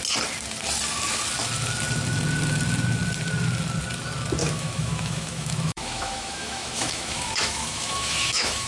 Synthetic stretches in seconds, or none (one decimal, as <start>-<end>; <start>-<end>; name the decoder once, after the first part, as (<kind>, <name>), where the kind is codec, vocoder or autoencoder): 4.4-8.7 (autoencoder, DAC-VAE)